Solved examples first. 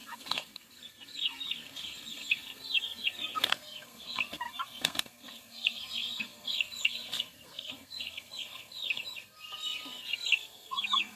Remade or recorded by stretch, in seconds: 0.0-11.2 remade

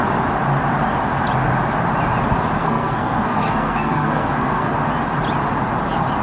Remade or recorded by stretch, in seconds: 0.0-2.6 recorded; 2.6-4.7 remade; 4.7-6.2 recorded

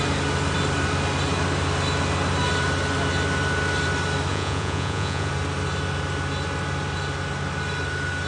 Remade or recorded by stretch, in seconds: 0.0-4.3 recorded; 4.3-5.3 remade; 5.3-8.3 recorded

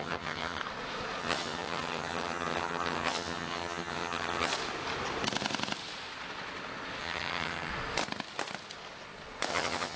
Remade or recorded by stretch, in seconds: 0.0-0.6 remade; 0.6-1.2 recorded; 1.2-4.5 remade; 4.5-7.0 recorded; 7.0-7.7 remade; 7.7-9.5 recorded; 9.5-10.0 remade